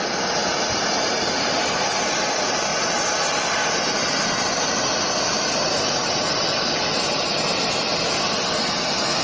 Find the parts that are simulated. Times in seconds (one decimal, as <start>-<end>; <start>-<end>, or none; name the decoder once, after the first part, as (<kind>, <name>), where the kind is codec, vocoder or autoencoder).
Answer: 2.7-4.6 (vocoder, BigVGAN v2); 6.0-7.4